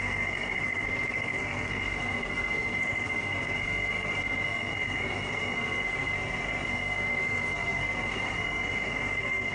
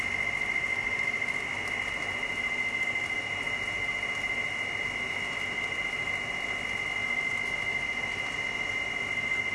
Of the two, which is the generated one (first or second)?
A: first